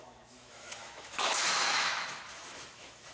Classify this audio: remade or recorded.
remade